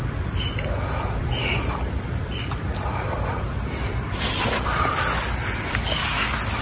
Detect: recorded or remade remade